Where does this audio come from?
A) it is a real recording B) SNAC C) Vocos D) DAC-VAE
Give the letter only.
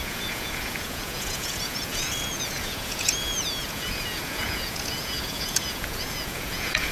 C